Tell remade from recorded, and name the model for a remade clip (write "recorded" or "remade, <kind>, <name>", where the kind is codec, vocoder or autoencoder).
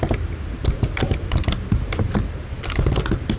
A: recorded